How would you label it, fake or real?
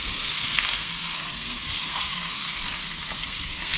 fake